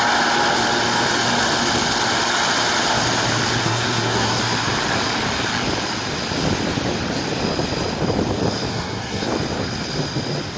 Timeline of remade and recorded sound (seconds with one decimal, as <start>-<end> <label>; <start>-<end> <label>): 0.0-3.6 recorded; 3.6-4.4 remade; 4.4-8.7 recorded; 8.7-9.3 remade; 9.3-10.6 recorded